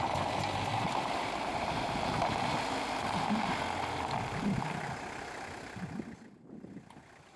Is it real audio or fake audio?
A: real